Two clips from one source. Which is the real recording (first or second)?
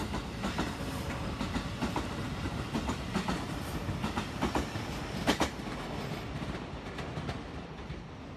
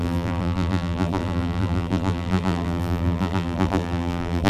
first